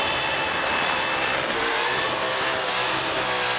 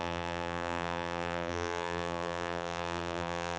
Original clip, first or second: first